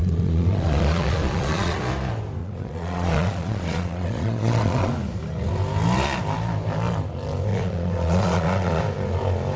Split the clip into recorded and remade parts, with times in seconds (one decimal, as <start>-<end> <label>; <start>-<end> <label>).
0.0-1.8 remade; 1.8-2.4 recorded; 2.4-4.9 remade; 4.9-7.5 recorded; 7.5-8.8 remade; 8.8-9.6 recorded